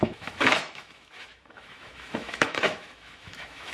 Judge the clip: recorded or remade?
remade